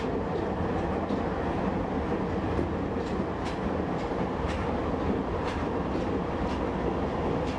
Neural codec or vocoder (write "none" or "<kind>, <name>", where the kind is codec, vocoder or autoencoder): none